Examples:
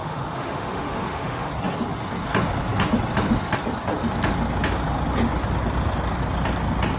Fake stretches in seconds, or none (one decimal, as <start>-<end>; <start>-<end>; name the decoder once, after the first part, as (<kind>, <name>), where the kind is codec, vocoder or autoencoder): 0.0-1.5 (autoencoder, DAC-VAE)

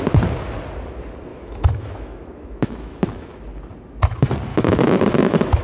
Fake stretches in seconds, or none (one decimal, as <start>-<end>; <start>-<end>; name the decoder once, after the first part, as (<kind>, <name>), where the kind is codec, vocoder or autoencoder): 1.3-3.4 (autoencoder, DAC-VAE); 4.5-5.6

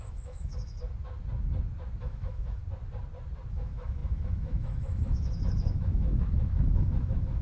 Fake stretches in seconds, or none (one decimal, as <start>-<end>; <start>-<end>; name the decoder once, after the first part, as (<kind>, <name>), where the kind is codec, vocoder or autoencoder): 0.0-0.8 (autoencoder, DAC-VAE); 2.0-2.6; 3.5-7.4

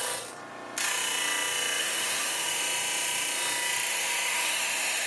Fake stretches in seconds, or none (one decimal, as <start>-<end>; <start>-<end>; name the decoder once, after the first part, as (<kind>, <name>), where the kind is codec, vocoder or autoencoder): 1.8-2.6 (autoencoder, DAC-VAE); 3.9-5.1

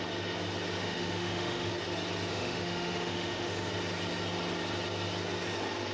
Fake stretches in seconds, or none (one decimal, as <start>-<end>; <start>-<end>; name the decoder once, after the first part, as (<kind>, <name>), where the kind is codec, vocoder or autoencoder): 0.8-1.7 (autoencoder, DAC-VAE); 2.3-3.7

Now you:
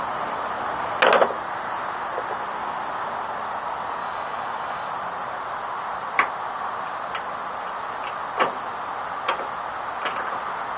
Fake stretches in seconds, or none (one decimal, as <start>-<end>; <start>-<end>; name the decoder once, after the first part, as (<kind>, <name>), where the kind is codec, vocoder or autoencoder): 4.0-4.9 (autoencoder, DAC-VAE)

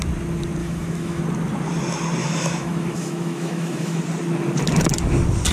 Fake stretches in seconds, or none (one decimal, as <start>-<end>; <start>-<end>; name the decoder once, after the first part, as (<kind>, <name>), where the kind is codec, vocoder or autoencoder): 0.6-1.2 (autoencoder, DAC-VAE); 2.2-4.0

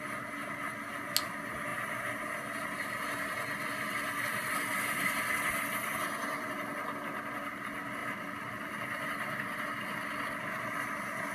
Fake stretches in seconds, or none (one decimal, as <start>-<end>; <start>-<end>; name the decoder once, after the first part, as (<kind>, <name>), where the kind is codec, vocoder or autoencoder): none